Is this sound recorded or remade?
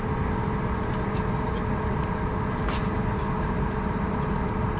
recorded